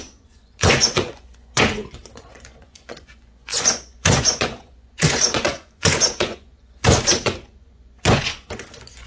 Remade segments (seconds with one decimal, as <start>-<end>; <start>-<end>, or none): 0.0-9.1